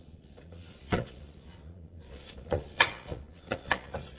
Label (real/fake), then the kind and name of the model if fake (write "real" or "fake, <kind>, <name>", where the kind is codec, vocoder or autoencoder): fake, vocoder, Vocos